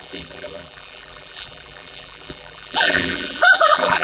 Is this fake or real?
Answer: fake